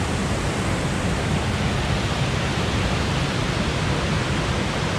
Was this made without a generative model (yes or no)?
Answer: yes